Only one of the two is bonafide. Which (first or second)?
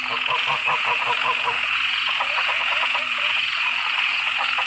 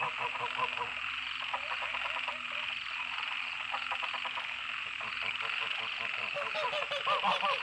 second